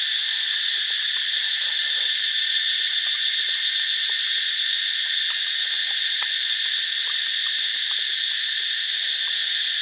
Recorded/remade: recorded